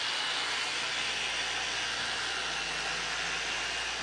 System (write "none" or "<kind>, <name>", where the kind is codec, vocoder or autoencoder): none